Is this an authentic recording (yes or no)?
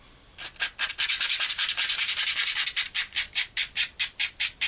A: yes